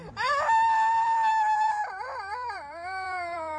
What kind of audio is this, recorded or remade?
remade